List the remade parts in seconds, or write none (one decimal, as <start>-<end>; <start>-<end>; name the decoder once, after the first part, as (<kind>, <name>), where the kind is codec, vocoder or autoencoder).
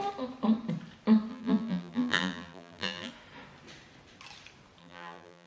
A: 1.3-3.1 (vocoder, BigVGAN v2); 4.8-5.5